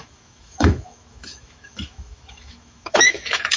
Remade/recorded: remade